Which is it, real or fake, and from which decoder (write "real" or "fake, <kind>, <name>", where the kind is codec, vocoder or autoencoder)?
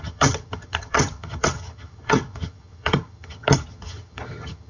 fake, vocoder, HiFi-GAN